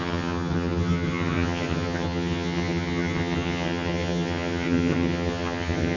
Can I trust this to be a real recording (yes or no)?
no